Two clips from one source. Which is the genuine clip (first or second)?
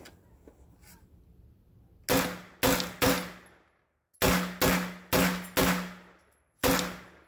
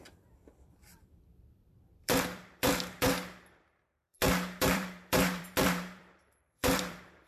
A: first